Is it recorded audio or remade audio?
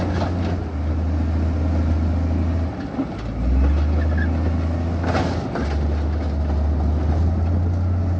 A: recorded